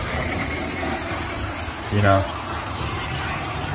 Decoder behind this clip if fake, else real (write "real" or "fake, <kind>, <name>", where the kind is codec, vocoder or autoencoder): fake, vocoder, BigVGAN v2